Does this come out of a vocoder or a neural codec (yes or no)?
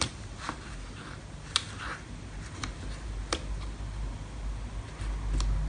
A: no